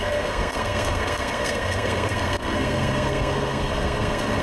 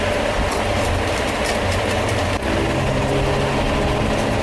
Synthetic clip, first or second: first